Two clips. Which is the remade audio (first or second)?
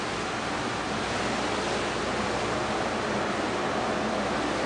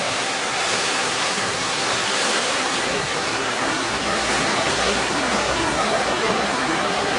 second